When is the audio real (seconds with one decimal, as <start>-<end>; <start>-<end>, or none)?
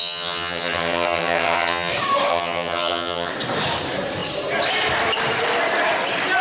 1.9-2.3; 3.3-6.4